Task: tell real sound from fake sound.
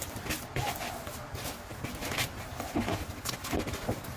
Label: real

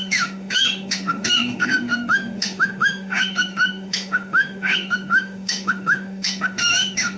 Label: fake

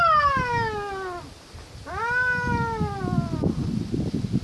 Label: real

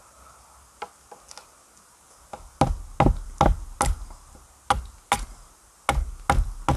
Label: real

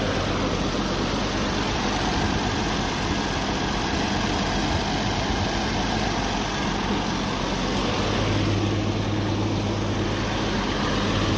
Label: real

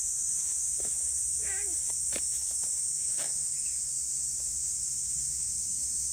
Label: fake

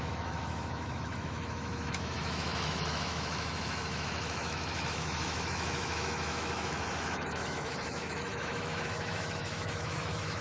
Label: fake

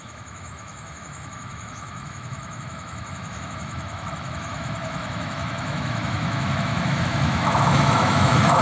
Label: fake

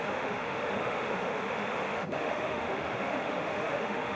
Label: fake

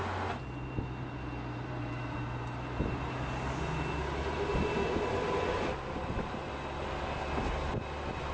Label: real